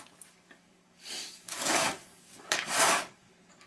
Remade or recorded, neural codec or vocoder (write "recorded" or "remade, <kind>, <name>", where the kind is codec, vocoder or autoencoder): remade, codec, DAC